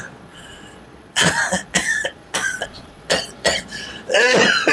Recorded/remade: remade